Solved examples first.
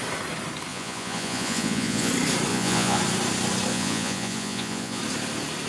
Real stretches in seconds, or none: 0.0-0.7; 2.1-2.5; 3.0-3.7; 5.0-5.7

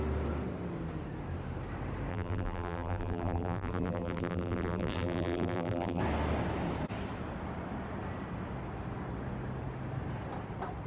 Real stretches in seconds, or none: 0.0-2.1; 6.0-10.9

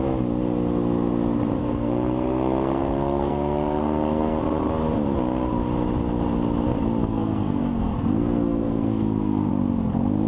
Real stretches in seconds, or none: 0.0-1.6; 4.4-7.0; 9.5-10.3

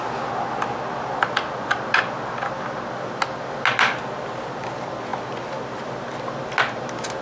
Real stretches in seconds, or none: 0.0-7.2

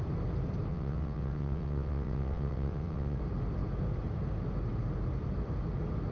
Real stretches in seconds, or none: 0.0-0.7; 3.2-6.1

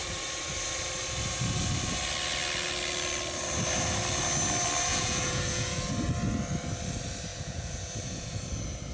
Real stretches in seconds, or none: 0.0-4.9; 5.9-7.3; 8.4-8.9

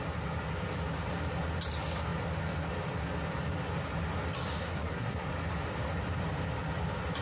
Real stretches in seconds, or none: 0.0-4.6; 5.3-7.2

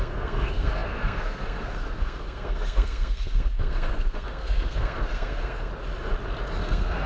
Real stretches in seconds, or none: 5.7-6.6